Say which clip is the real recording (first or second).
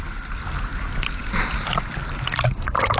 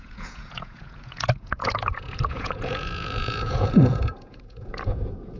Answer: first